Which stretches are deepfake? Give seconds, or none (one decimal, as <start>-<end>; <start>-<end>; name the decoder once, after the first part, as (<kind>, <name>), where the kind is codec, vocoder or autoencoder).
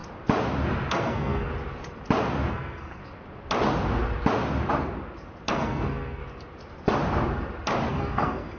0.9-1.5 (codec, SNAC); 2.5-3.0; 5.5-6.2; 7.9-8.6